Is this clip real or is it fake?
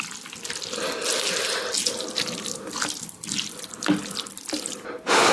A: real